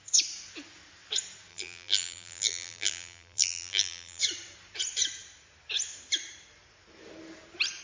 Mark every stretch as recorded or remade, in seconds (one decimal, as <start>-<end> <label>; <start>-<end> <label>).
0.0-1.5 recorded; 1.5-4.2 remade; 4.2-7.8 recorded